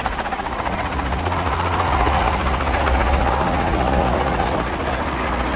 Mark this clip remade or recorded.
remade